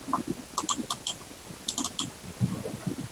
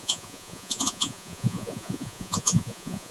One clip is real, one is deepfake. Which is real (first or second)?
first